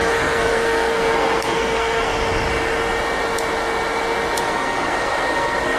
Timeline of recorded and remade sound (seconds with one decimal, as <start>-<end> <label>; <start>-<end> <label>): 0.0-2.1 remade; 2.1-4.4 recorded; 4.4-5.8 remade